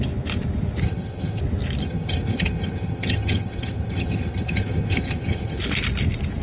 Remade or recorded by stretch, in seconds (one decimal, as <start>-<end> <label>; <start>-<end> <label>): 0.0-0.8 recorded; 0.8-1.4 remade; 1.4-1.8 recorded; 1.8-5.6 remade; 5.6-6.4 recorded